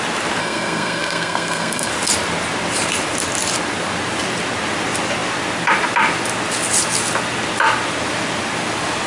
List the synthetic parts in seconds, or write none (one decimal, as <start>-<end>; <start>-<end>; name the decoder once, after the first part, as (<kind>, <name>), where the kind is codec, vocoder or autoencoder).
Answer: 0.4-1.9 (codec, SNAC)